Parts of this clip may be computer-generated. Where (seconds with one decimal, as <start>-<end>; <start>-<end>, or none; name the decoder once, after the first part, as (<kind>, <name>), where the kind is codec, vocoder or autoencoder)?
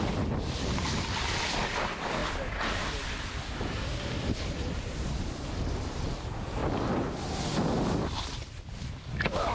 2.2-6.0 (vocoder, BigVGAN v2); 6.6-7.2